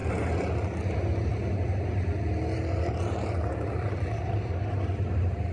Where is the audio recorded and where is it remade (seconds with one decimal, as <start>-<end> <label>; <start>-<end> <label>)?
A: 0.0-5.5 recorded